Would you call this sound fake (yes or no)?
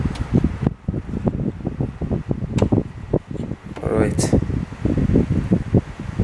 no